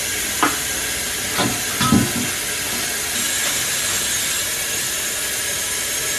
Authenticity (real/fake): real